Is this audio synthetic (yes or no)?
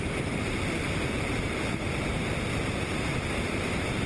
yes